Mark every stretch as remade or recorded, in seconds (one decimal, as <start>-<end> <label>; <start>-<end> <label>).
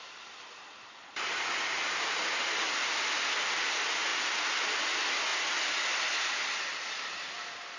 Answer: 0.0-7.8 recorded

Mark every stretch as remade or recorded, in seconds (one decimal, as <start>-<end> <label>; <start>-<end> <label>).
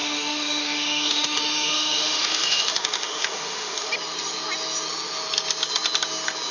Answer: 0.0-3.9 remade; 3.9-6.5 recorded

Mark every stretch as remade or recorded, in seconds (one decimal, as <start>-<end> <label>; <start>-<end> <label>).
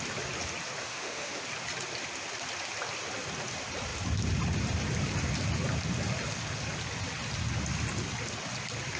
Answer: 0.0-0.8 recorded; 0.8-1.4 remade; 1.4-9.0 recorded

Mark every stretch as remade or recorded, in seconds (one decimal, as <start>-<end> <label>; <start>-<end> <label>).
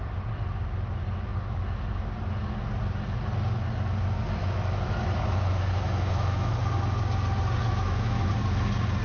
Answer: 0.0-4.4 recorded; 4.4-6.6 remade; 6.6-7.6 recorded; 7.6-8.3 remade; 8.3-9.0 recorded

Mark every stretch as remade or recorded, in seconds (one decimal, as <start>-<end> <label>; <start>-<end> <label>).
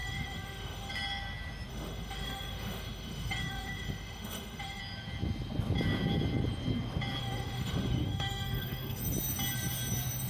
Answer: 0.0-0.9 remade; 0.9-1.7 recorded; 1.7-4.8 remade; 4.8-7.2 recorded; 7.2-9.0 remade; 9.0-10.3 recorded